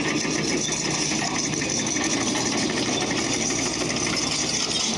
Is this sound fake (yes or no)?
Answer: no